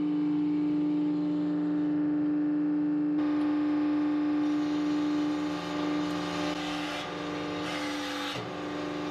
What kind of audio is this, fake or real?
real